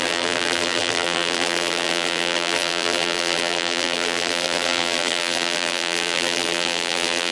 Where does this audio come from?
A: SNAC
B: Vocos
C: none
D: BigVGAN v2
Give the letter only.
D